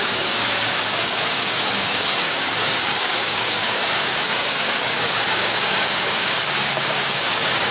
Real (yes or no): no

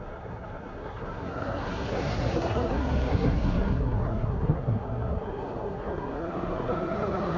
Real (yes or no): no